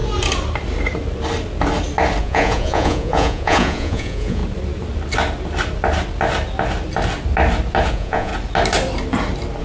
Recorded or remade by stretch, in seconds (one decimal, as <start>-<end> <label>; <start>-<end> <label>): 0.0-2.2 recorded; 2.2-4.4 remade; 4.4-7.9 recorded; 7.9-8.3 remade; 8.3-9.6 recorded